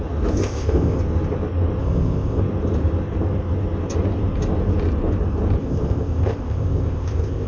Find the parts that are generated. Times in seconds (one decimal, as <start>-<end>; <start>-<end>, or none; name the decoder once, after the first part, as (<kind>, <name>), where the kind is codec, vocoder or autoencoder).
0.4-1.0 (codec, ZipCodec); 1.8-2.4; 5.6-7.5